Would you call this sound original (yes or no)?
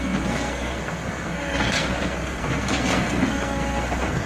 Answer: no